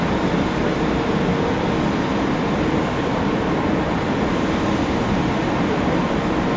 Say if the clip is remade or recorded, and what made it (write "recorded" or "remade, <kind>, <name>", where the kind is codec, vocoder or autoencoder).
recorded